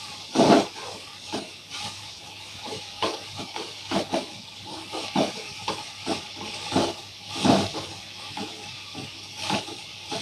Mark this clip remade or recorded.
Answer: remade